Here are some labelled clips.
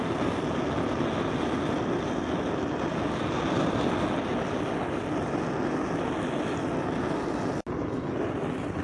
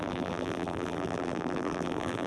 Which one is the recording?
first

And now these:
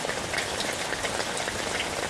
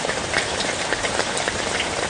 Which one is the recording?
first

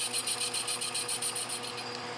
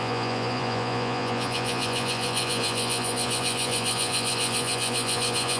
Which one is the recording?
first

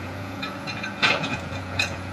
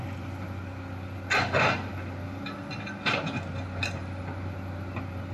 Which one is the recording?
second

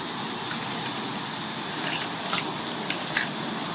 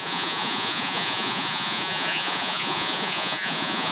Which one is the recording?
first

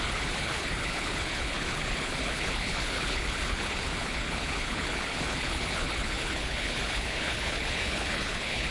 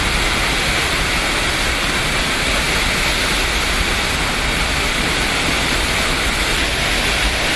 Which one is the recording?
second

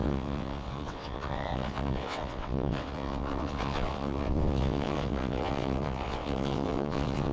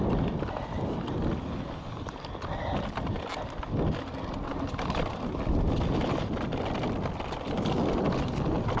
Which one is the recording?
second